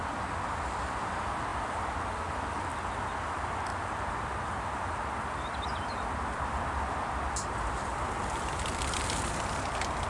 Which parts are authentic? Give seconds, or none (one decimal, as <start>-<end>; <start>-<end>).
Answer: 2.7-3.3